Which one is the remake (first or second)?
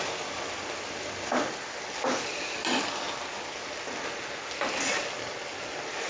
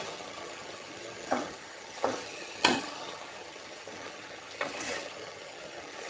second